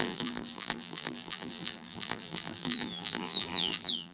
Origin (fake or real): fake